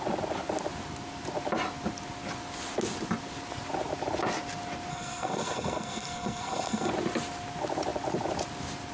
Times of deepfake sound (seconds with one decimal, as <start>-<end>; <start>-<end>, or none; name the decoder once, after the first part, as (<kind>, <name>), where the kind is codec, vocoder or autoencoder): 4.9-6.9 (codec, SNAC)